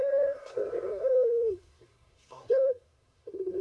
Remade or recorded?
remade